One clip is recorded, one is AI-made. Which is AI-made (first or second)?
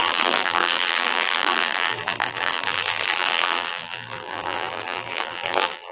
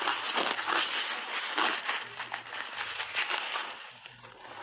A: first